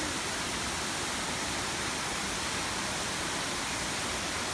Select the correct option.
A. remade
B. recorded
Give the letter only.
B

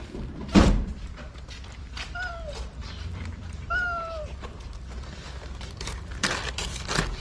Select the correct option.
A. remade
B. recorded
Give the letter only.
A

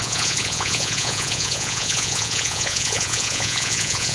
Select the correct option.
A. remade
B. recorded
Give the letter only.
A